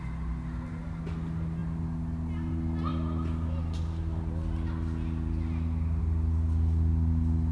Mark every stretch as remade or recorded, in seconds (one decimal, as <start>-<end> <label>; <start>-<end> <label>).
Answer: 0.0-7.5 recorded